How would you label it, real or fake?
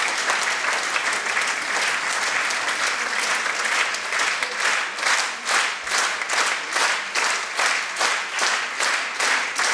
real